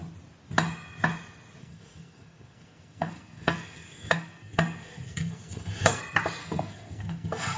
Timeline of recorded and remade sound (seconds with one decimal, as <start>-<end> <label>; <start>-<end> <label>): 0.0-1.6 recorded; 1.6-6.0 remade; 6.0-6.4 recorded; 6.4-7.6 remade